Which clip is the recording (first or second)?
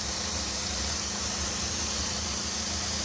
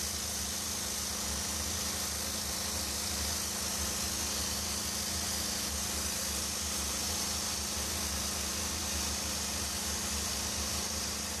second